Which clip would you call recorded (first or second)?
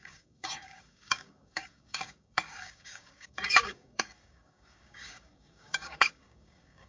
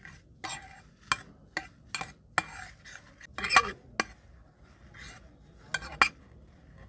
second